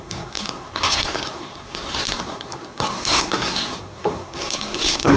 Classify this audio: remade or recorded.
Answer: remade